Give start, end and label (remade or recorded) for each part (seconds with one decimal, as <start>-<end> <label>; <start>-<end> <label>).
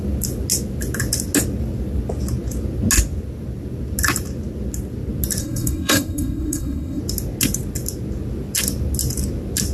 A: 0.0-5.4 recorded; 5.4-7.0 remade; 7.0-9.7 recorded